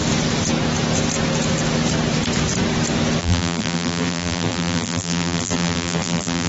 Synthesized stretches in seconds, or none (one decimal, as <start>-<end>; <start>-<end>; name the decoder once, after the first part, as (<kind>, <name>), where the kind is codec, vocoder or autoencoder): 3.2-6.5 (vocoder, BigVGAN v2)